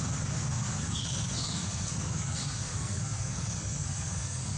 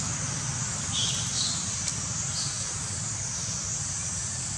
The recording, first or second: second